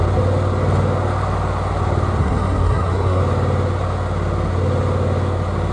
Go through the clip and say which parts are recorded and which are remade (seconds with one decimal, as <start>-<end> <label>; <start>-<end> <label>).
0.0-2.2 recorded; 2.2-3.2 remade; 3.2-5.7 recorded